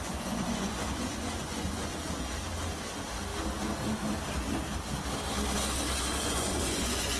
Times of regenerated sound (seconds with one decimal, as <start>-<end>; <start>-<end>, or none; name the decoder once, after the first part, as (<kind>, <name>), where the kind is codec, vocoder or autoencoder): 0.0-1.9 (vocoder, Vocos); 6.2-7.2

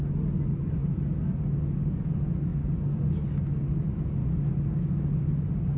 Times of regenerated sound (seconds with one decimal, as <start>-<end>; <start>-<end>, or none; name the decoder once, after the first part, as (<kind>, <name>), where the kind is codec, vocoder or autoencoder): none

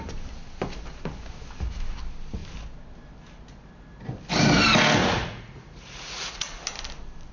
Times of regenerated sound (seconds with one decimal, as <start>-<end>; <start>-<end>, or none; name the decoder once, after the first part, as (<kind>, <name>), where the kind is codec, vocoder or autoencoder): 5.0-6.6 (vocoder, Vocos)